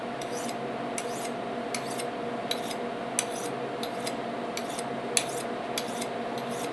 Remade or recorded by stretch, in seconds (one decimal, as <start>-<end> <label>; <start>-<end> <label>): 0.0-6.7 recorded